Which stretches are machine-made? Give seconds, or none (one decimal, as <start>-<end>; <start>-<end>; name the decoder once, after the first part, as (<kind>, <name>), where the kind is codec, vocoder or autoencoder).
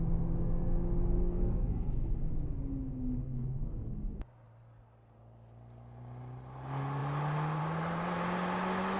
1.2-2.3 (codec, SNAC); 3.2-4.1